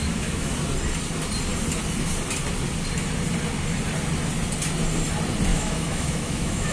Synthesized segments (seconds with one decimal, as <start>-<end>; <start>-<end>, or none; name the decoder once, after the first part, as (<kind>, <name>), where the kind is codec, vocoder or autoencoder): 0.0-0.5 (autoencoder, DAC-VAE); 5.5-6.7